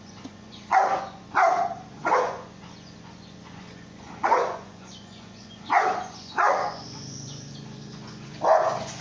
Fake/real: fake